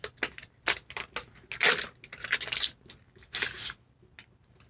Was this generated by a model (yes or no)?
no